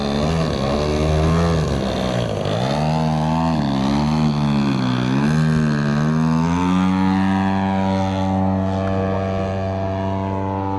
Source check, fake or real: real